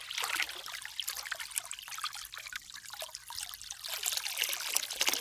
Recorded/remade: recorded